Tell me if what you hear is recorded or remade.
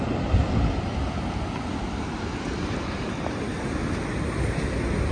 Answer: recorded